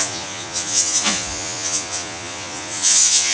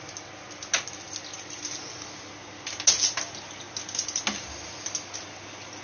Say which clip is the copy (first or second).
first